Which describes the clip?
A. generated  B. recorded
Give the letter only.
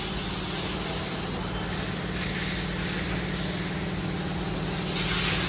B